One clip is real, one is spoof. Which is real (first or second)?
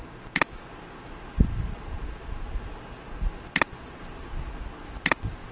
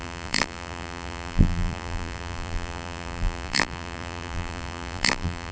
first